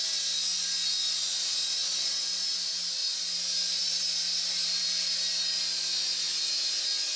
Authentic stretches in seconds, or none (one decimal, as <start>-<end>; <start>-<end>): 0.0-7.2